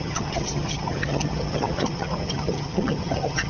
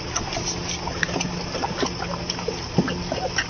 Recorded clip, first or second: second